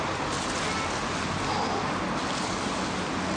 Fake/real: real